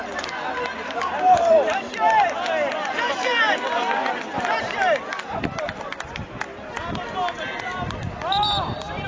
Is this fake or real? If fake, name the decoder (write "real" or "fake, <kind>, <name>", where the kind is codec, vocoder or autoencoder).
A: real